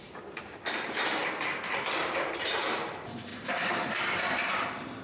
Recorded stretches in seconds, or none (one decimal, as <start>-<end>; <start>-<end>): none